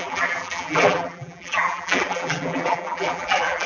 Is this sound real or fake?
fake